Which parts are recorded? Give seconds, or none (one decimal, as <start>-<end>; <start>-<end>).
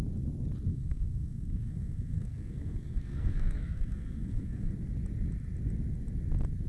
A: 0.0-0.7; 4.7-6.7